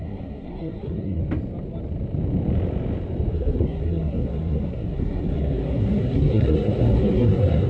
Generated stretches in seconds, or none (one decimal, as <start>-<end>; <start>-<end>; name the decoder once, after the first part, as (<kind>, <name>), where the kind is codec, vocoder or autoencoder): 0.0-1.2 (codec, SNAC); 3.3-7.7